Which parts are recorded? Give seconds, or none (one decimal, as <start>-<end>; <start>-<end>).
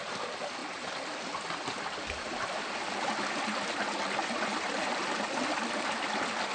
0.0-4.5; 5.2-6.5